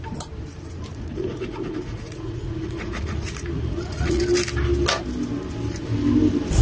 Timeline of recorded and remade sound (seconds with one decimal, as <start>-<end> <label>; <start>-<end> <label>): 0.0-0.9 recorded; 0.9-4.2 remade; 4.2-6.6 recorded

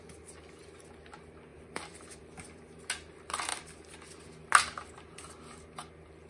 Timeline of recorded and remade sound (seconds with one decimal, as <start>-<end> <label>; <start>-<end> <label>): 0.0-1.5 recorded; 1.5-2.8 remade; 2.8-3.5 recorded; 3.5-4.1 remade; 4.1-6.3 recorded

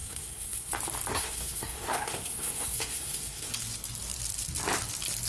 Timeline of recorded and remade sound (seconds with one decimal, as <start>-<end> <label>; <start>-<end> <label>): 0.0-0.7 remade; 0.7-1.1 recorded; 1.1-3.5 remade; 3.5-5.3 recorded

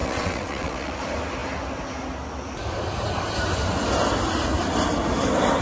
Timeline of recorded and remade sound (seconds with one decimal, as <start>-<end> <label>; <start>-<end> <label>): 0.0-1.0 remade; 1.0-5.6 recorded

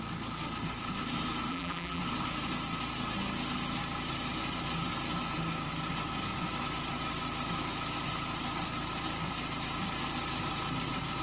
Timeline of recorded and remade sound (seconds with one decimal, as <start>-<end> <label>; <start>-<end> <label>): 0.0-1.5 recorded; 1.5-2.0 remade; 2.0-11.2 recorded

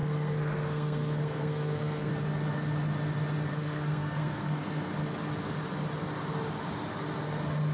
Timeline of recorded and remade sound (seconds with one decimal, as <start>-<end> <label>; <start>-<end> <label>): 0.0-2.1 remade; 2.1-3.5 recorded; 3.5-4.9 remade; 4.9-7.7 recorded

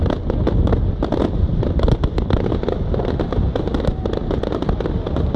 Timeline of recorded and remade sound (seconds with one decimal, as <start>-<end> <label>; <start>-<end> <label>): 0.0-3.5 recorded; 3.5-4.4 remade; 4.4-5.4 recorded

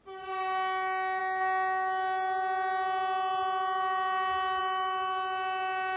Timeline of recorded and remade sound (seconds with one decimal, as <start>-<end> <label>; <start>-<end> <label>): 0.0-6.0 recorded